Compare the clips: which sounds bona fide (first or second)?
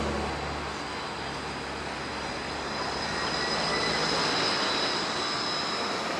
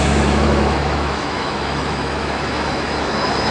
first